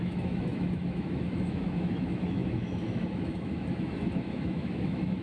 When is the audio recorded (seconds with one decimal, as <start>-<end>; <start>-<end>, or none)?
none